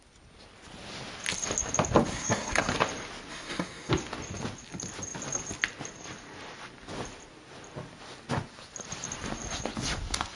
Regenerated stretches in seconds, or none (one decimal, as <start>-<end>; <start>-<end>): 2.1-2.7; 3.3-3.9